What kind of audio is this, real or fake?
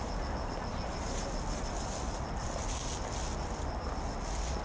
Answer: real